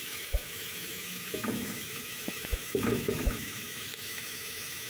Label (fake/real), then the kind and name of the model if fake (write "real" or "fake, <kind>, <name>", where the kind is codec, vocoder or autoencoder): fake, autoencoder, DAC-VAE